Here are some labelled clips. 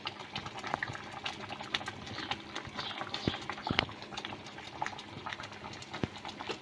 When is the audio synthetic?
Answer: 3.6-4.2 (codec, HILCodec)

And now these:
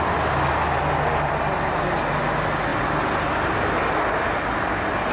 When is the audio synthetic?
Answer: none